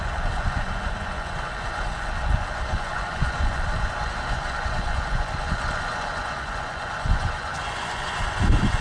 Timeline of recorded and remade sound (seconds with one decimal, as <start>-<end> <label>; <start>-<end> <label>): 0.0-8.8 remade